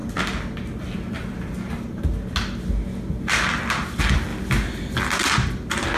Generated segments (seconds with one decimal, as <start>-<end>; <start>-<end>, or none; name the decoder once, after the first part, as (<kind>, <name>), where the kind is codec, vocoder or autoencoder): none